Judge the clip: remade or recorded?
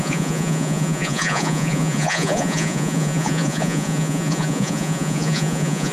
remade